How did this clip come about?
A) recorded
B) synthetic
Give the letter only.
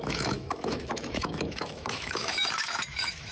B